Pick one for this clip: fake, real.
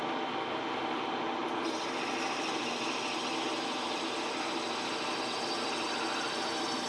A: real